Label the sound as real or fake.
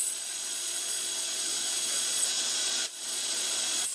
fake